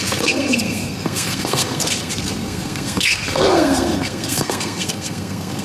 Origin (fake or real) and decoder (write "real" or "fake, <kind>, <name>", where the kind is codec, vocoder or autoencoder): fake, codec, SNAC